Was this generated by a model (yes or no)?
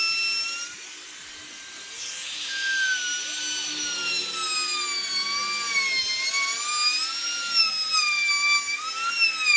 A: no